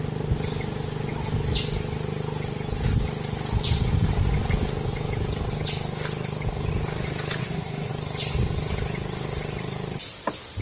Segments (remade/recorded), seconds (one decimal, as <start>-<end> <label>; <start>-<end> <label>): 0.0-7.4 recorded; 7.4-7.9 remade; 7.9-10.6 recorded